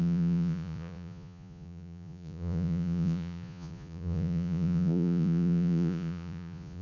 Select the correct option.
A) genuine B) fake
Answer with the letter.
B